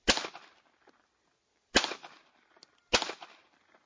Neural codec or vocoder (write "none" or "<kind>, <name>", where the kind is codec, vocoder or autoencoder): none